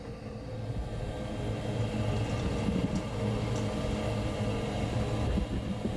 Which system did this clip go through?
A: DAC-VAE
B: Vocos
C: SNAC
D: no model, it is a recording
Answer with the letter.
D